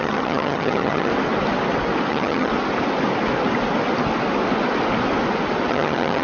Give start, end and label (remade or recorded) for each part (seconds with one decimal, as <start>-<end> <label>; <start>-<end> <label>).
0.0-1.1 remade; 1.1-2.1 recorded; 2.1-2.5 remade; 2.5-5.7 recorded; 5.7-6.2 remade